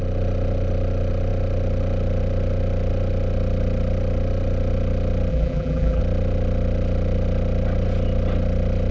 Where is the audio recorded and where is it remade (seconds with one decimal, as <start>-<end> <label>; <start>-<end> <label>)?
0.0-5.3 recorded; 5.3-6.0 remade; 6.0-8.9 recorded